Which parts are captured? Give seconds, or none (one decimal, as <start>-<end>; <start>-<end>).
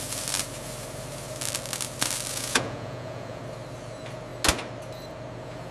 0.0-2.3; 3.4-5.7